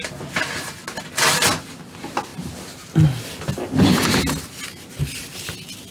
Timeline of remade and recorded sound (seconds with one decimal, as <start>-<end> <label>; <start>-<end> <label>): 0.0-5.9 recorded